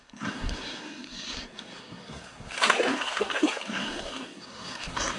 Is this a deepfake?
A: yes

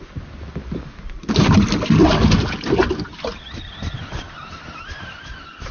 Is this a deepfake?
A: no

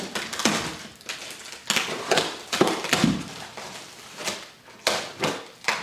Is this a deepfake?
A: no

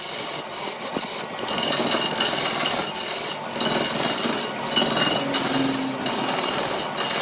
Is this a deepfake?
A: no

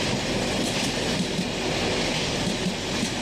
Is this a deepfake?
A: no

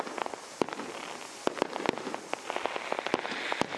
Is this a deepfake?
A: no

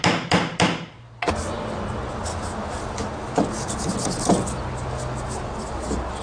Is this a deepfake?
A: no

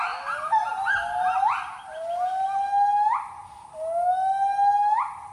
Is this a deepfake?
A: no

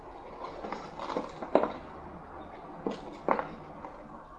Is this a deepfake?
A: no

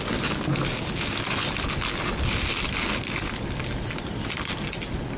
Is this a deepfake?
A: no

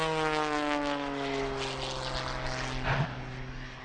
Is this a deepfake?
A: no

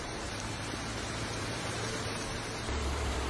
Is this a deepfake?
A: yes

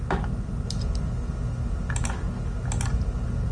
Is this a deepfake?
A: no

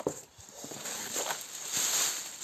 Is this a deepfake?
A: no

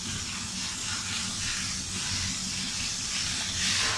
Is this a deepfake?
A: no